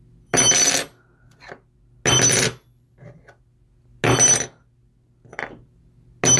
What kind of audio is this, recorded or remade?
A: recorded